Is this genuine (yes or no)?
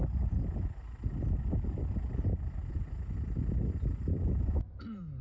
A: yes